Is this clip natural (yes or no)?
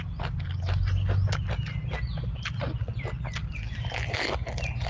yes